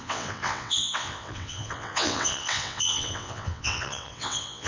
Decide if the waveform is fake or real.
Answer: fake